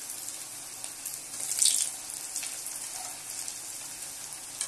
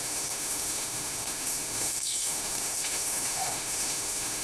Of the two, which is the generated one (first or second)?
second